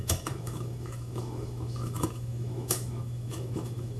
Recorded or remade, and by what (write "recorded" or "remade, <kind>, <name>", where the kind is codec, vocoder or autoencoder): remade, autoencoder, DAC-VAE